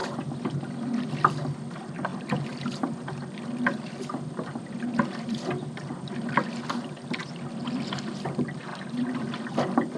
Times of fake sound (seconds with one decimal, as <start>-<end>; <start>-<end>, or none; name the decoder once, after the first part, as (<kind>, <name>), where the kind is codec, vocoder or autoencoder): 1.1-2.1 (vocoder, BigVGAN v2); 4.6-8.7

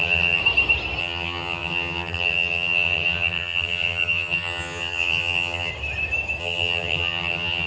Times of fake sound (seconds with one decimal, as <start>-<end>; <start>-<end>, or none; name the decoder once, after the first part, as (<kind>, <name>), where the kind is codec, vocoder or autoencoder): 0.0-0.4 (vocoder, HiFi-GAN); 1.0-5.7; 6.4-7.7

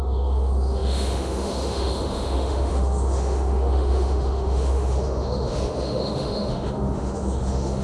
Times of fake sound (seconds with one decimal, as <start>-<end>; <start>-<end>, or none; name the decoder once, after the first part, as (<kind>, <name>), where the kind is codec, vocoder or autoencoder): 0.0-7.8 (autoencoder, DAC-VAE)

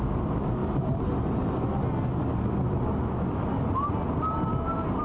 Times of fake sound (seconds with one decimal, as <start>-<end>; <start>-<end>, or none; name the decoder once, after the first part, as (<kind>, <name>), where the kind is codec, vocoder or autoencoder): none